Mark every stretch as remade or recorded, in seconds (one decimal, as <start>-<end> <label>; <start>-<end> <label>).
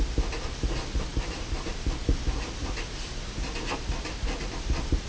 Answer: 0.0-5.1 recorded